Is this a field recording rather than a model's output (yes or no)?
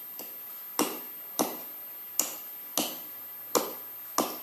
yes